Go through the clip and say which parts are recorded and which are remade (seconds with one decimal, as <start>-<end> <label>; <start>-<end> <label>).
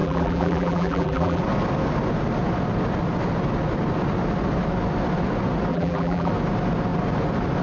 0.0-1.4 remade; 1.4-5.7 recorded; 5.7-6.3 remade; 6.3-7.6 recorded